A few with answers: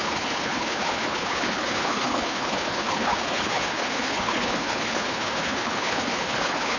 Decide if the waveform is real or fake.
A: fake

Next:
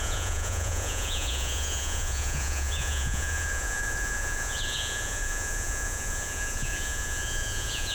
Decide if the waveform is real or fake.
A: fake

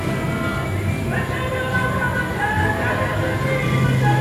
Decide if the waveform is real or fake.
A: real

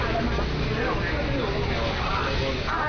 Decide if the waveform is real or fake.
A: real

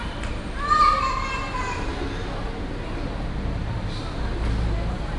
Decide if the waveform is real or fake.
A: fake